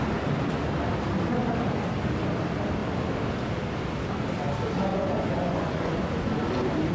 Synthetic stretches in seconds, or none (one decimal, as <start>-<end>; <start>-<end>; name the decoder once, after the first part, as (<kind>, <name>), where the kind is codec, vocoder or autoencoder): 4.9-6.0 (vocoder, Vocos)